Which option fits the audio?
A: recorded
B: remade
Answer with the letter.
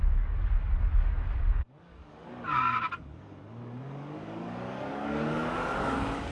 B